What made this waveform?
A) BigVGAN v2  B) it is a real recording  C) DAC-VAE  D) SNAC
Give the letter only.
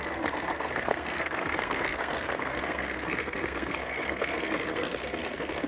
D